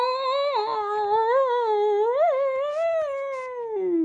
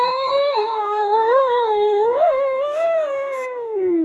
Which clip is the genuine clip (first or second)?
first